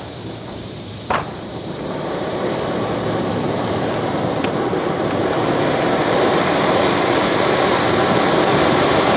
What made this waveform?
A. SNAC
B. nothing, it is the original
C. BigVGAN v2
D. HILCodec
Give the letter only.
C